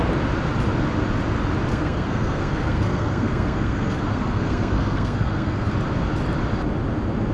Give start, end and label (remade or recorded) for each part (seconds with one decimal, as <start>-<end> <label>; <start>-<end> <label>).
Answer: 0.0-1.7 recorded; 1.7-5.7 remade; 5.7-7.3 recorded

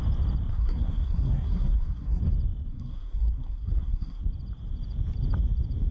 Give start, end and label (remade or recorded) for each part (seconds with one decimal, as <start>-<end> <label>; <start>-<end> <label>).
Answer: 0.0-0.5 recorded; 0.5-2.2 remade; 2.2-2.7 recorded; 2.7-4.2 remade; 4.2-5.9 recorded

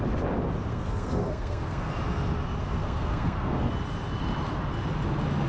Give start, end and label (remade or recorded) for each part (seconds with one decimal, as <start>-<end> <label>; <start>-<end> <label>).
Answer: 0.0-0.7 recorded; 0.7-1.9 remade; 1.9-2.6 recorded; 2.6-3.7 remade; 3.7-5.5 recorded

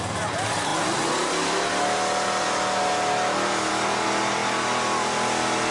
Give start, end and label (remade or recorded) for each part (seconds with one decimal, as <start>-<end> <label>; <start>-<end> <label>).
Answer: 0.0-5.7 recorded

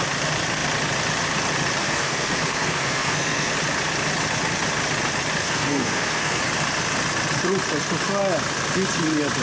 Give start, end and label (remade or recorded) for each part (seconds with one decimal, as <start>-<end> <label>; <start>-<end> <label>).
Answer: 0.0-1.8 recorded; 1.8-3.5 remade; 3.5-5.4 recorded; 5.4-6.4 remade; 6.4-9.4 recorded